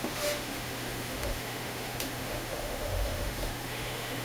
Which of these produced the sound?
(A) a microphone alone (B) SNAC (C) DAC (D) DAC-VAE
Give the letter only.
D